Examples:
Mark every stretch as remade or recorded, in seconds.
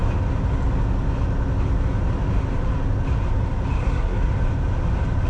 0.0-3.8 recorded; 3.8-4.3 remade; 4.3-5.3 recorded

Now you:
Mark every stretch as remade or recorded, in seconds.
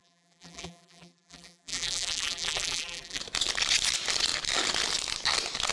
0.0-3.2 remade; 3.2-5.7 recorded